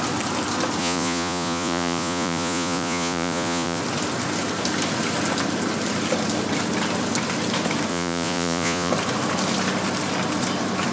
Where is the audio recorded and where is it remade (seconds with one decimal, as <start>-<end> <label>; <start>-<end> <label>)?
0.0-0.8 recorded; 0.8-3.8 remade; 3.8-7.9 recorded; 7.9-8.9 remade; 8.9-10.9 recorded